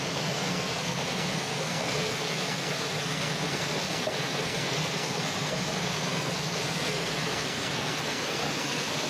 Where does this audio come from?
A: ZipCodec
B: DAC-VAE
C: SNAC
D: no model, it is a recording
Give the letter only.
C